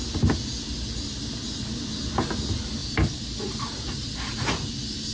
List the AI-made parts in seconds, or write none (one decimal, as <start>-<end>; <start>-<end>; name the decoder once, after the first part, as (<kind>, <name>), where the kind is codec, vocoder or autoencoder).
none